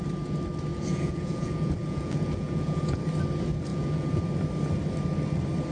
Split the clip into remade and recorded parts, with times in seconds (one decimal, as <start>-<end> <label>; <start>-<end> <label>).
0.0-0.7 recorded; 0.7-3.0 remade; 3.0-3.7 recorded; 3.7-4.2 remade; 4.2-5.7 recorded